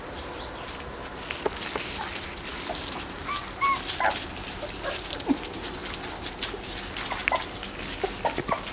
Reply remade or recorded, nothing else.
recorded